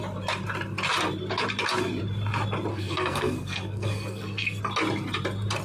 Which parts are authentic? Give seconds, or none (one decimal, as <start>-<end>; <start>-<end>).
0.0-2.7; 4.6-5.6